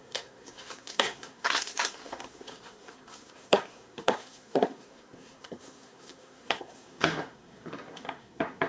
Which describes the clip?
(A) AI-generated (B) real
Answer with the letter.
A